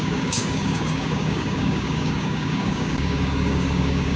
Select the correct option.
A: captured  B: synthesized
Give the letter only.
B